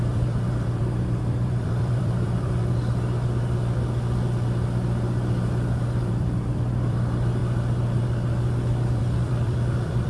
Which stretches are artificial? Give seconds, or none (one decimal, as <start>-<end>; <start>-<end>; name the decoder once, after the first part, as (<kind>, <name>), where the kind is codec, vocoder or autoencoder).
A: 0.0-2.6 (vocoder, BigVGAN v2); 6.0-7.4; 9.0-10.1